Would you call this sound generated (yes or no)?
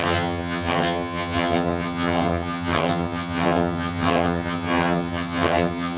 yes